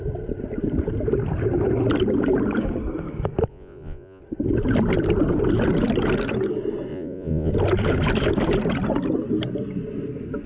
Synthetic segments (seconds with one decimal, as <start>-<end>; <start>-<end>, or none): 3.5-4.2; 6.9-7.5

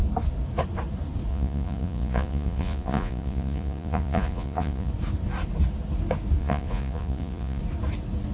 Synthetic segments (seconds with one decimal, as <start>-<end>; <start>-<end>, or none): 1.3-4.9; 6.4-7.6

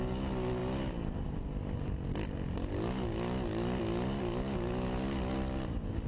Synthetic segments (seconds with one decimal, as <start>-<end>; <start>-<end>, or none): none

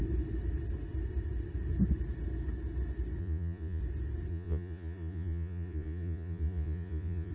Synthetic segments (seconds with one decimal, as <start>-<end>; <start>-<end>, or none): 3.2-3.8; 4.3-7.3